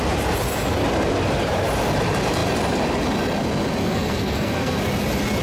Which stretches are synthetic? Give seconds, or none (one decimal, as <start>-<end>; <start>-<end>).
3.8-4.8

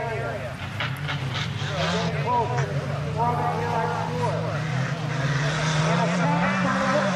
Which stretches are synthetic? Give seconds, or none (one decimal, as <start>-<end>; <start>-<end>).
0.0-0.6

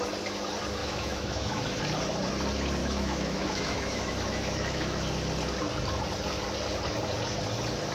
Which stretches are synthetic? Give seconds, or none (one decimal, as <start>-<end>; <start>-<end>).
0.8-1.8; 2.8-5.0

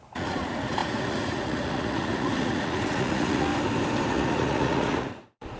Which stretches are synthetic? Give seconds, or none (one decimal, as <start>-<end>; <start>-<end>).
0.0-3.5; 4.1-5.6

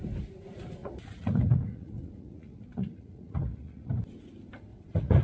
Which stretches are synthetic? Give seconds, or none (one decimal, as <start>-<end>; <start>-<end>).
0.8-3.9; 4.7-5.2